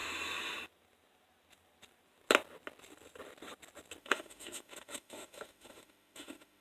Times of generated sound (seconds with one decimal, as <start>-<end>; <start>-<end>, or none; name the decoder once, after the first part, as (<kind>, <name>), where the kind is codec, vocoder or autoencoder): 4.0-6.6 (autoencoder, DAC-VAE)